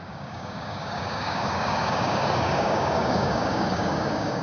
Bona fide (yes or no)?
no